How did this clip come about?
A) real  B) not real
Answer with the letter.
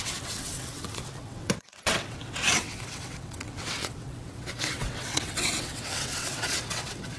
B